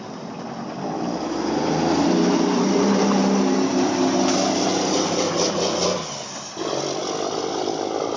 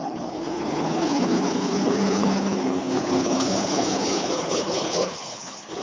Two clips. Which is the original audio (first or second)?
first